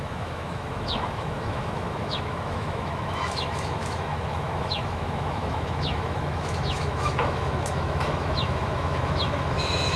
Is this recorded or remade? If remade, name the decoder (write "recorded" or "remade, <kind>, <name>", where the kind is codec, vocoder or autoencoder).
remade, autoencoder, DAC-VAE